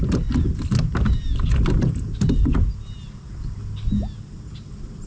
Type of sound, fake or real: real